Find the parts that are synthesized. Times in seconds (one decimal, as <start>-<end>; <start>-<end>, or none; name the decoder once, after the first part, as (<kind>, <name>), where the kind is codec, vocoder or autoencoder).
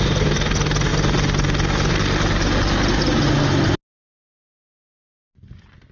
none